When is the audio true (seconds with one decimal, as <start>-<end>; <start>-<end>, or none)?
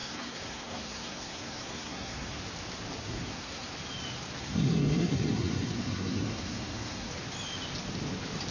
2.4-3.0; 3.7-4.4; 7.1-8.5